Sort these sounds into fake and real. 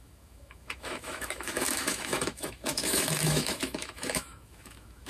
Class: fake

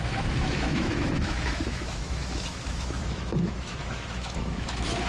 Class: fake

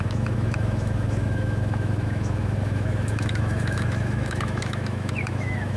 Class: fake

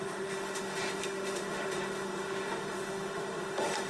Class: fake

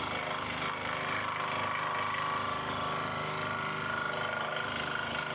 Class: real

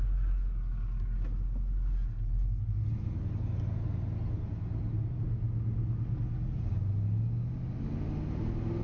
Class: real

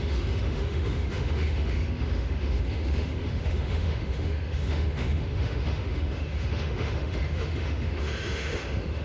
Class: fake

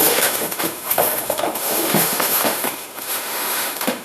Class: fake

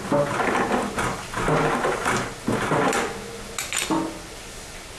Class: real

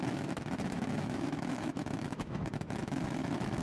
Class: fake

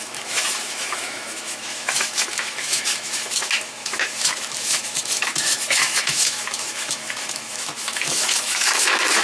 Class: fake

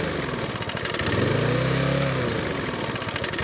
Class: real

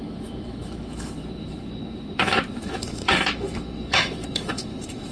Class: fake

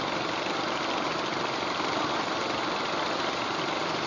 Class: real